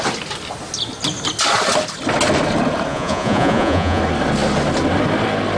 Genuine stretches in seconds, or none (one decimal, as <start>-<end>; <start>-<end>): 0.0-2.9; 4.0-5.6